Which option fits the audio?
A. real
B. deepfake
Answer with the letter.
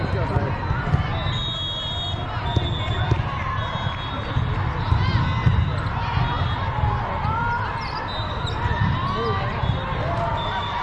A